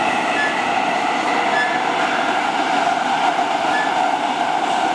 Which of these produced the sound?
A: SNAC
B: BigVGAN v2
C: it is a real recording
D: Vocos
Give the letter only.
C